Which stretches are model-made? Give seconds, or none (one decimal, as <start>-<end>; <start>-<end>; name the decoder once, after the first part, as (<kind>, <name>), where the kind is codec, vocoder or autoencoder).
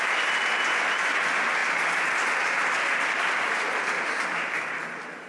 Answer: none